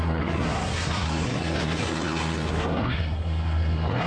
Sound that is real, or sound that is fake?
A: fake